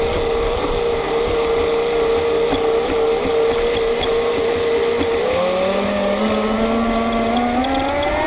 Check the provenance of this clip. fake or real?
real